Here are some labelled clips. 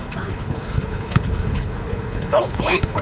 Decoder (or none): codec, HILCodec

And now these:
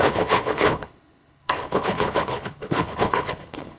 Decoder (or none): codec, HILCodec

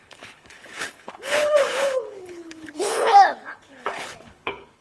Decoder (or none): codec, HILCodec